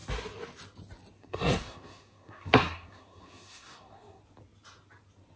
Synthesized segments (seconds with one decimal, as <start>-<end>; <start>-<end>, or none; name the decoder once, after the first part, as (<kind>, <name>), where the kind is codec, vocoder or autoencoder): 1.2-4.2 (codec, SNAC)